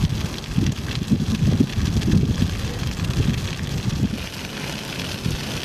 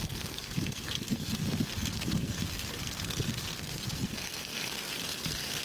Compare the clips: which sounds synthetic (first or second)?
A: second